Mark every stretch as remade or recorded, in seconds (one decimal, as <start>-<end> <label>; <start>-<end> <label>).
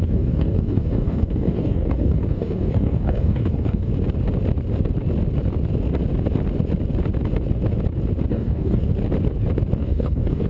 0.0-3.9 remade; 3.9-8.3 recorded; 8.3-8.8 remade; 8.8-9.8 recorded; 9.8-10.5 remade